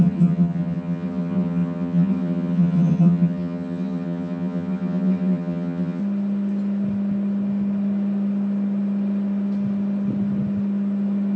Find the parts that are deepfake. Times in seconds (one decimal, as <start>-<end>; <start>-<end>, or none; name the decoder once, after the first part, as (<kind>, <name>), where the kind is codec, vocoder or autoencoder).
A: 0.0-6.0 (vocoder, HiFi-GAN)